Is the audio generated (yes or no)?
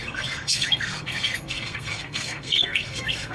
yes